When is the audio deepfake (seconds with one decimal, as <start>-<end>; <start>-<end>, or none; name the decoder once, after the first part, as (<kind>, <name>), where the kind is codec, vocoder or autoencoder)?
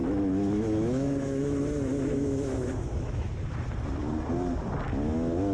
0.0-3.3 (autoencoder, DAC-VAE)